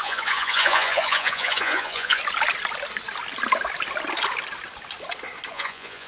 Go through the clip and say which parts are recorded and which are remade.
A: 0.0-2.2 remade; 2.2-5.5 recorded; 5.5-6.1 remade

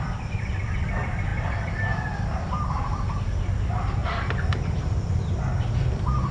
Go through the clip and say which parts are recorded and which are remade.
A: 0.0-6.3 remade

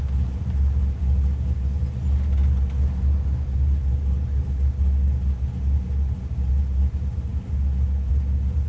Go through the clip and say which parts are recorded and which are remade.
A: 0.0-8.7 recorded

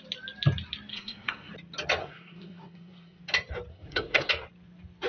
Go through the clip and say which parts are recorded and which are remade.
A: 0.0-0.9 recorded; 0.9-1.5 remade; 1.5-2.0 recorded; 2.0-3.2 remade; 3.2-3.7 recorded; 3.7-4.3 remade; 4.3-5.1 recorded

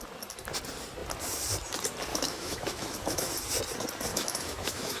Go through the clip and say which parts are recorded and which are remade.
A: 0.0-2.1 recorded; 2.1-3.3 remade; 3.3-4.1 recorded; 4.1-5.0 remade